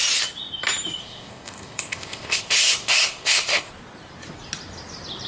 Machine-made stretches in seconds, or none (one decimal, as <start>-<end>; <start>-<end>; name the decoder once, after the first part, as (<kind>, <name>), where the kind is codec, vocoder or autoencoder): 1.0-3.7 (codec, ZipCodec)